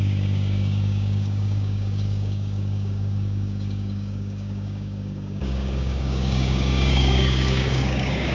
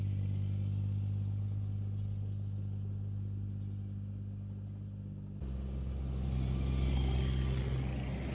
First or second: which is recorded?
second